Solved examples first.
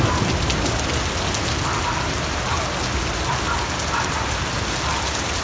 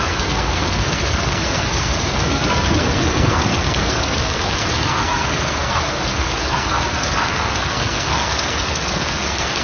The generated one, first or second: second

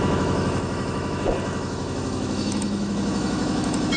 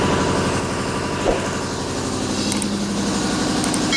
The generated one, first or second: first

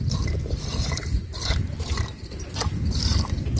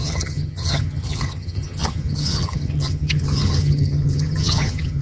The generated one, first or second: second